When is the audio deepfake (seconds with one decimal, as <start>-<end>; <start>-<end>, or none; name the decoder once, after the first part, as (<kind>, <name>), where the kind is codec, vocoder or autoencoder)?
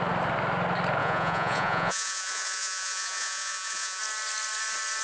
1.0-4.0 (vocoder, Vocos)